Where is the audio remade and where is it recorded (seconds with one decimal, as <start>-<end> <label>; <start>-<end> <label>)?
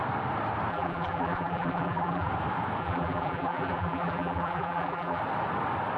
0.0-0.7 recorded; 0.7-2.3 remade; 2.3-2.8 recorded; 2.8-5.2 remade; 5.2-6.0 recorded